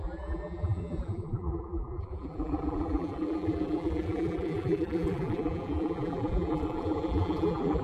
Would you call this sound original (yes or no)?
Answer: no